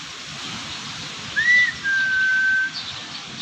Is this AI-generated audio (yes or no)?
no